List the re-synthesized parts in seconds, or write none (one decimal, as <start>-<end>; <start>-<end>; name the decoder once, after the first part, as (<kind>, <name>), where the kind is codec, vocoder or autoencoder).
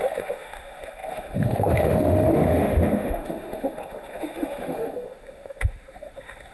0.0-6.5 (autoencoder, DAC-VAE)